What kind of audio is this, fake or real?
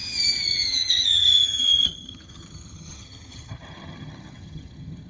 fake